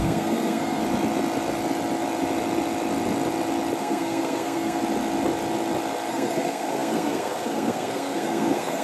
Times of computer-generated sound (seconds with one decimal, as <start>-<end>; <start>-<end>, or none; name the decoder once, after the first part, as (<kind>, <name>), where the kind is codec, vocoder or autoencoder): 0.0-0.8 (codec, SNAC); 3.8-4.8; 6.1-8.8